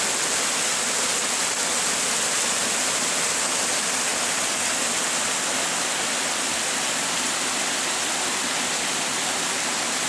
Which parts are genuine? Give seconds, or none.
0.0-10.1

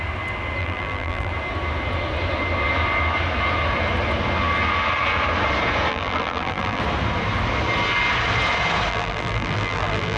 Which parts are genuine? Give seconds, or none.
0.0-0.6; 1.3-5.9; 6.8-8.9

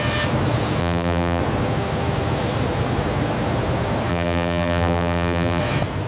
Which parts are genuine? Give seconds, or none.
0.0-0.8; 1.4-4.1; 5.6-6.1